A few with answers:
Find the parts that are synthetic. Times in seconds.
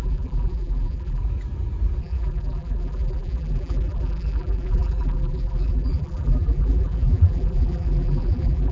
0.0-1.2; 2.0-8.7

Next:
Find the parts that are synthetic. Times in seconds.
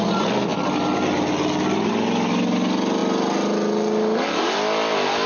none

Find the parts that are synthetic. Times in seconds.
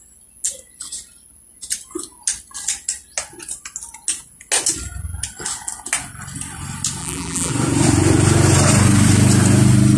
7.0-7.5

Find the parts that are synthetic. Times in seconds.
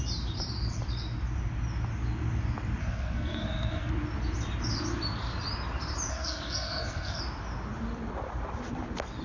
2.8-3.9; 6.1-7.2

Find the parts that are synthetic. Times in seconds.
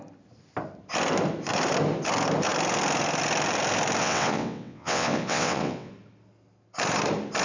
4.0-5.9